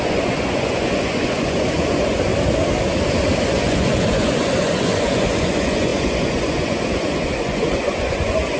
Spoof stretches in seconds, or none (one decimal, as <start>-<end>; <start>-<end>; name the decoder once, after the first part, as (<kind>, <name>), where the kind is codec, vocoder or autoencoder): 0.0-2.3 (vocoder, Vocos); 3.4-8.6